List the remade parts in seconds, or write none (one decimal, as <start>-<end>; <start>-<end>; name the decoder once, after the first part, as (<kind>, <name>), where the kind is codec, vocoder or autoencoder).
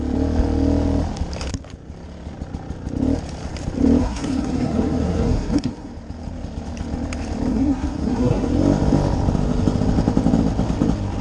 4.0-5.9 (codec, SNAC); 7.5-8.5